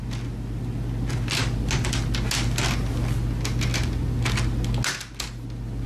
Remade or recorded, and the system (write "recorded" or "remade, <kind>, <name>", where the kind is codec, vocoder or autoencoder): recorded